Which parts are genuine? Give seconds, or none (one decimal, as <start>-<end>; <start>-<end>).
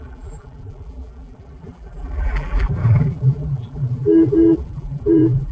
none